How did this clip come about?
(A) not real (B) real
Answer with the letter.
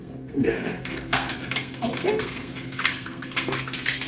A